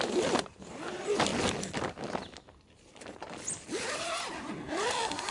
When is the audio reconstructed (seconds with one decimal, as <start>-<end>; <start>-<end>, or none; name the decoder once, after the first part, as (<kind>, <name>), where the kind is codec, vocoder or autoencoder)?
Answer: 0.0-1.3 (vocoder, BigVGAN v2); 4.5-5.3